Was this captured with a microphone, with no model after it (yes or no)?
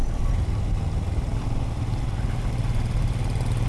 yes